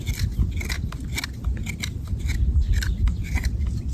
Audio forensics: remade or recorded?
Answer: recorded